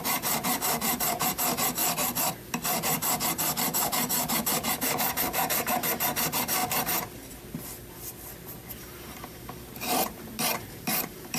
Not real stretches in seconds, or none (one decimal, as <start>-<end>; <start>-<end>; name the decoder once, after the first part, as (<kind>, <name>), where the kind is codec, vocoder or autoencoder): 0.0-1.8 (vocoder, BigVGAN v2); 2.7-6.6; 8.7-11.4